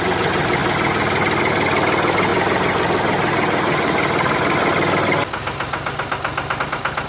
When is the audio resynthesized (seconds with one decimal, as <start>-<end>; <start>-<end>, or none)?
none